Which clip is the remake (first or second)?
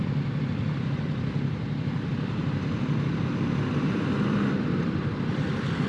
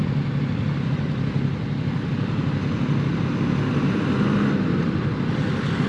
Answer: first